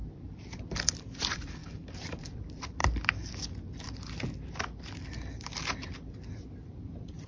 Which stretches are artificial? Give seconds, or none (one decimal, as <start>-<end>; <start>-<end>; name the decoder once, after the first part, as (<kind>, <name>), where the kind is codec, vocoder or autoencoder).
0.0-1.6 (vocoder, BigVGAN v2); 2.2-2.8; 6.7-7.3